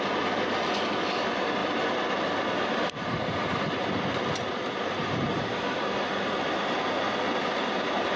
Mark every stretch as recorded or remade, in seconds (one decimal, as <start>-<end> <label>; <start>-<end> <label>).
0.0-8.2 recorded